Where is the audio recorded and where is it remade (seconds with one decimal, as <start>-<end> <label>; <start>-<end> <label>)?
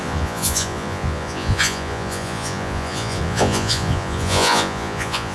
0.0-5.3 remade